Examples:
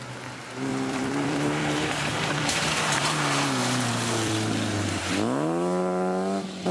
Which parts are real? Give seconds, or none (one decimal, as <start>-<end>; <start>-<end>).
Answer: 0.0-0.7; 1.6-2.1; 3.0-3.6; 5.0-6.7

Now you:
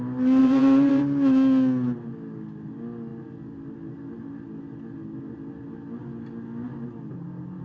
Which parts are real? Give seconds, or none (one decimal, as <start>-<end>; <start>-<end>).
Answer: 0.0-0.4; 1.0-7.6

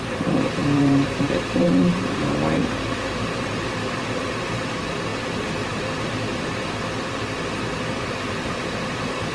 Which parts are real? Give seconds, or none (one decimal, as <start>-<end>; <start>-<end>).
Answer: none

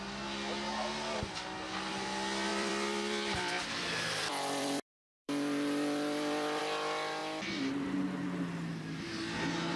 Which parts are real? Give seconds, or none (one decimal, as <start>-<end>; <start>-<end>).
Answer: 0.0-2.5; 6.6-9.8

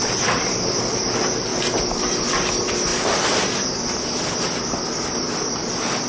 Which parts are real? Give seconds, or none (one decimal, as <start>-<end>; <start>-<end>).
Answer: 0.0-6.1

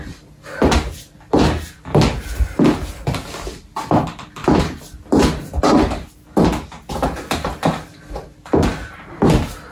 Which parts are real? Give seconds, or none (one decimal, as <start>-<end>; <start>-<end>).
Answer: 0.0-4.4; 5.0-9.7